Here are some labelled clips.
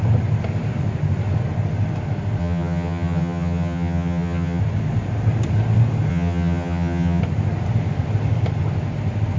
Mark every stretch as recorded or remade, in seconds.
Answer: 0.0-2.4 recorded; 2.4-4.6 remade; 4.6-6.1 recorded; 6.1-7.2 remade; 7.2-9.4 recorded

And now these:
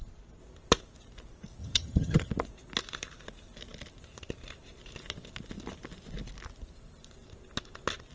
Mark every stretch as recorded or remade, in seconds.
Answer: 0.0-1.6 recorded; 1.6-2.3 remade; 2.3-8.1 recorded

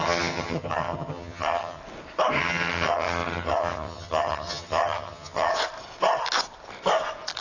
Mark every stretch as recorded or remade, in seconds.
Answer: 0.0-1.8 remade; 1.8-2.4 recorded; 2.4-5.5 remade; 5.5-7.4 recorded

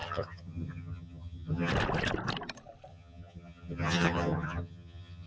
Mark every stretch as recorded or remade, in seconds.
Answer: 0.0-1.7 remade; 1.7-2.9 recorded; 2.9-5.3 remade

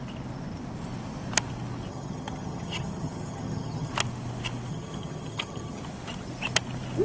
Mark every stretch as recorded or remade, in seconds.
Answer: 0.0-1.9 recorded; 1.9-3.9 remade; 3.9-4.7 recorded; 4.7-5.8 remade; 5.8-7.0 recorded

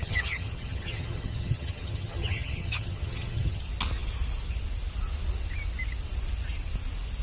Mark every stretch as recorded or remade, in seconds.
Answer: 0.0-3.6 remade; 3.6-7.2 recorded

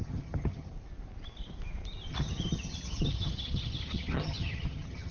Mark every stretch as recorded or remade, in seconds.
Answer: 0.0-0.7 remade; 0.7-2.1 recorded; 2.1-5.1 remade

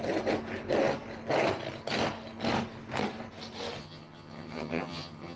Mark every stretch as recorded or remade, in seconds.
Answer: 0.0-3.8 recorded; 3.8-5.4 remade